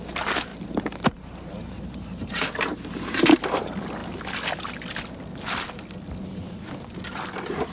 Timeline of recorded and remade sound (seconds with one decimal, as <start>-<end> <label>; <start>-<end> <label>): 0.0-0.5 recorded; 0.5-3.6 remade; 3.6-7.7 recorded